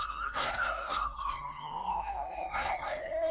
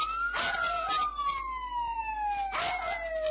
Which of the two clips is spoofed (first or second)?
first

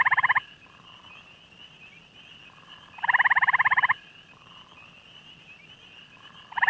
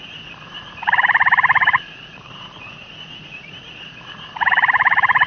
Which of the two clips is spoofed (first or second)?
second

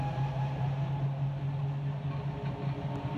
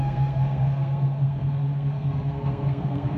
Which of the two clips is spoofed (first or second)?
second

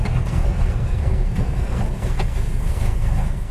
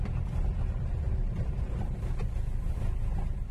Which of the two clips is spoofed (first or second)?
first